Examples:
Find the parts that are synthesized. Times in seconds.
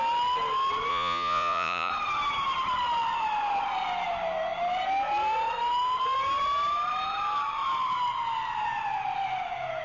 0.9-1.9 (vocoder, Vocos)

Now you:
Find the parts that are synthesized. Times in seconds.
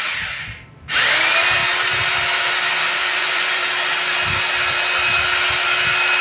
3.0-3.6 (vocoder, Vocos)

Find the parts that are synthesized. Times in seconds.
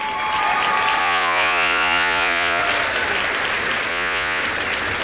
1.0-2.6 (vocoder, Vocos); 3.9-4.4